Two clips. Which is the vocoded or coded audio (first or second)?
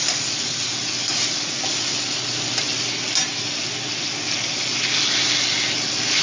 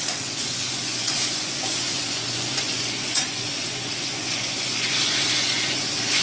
second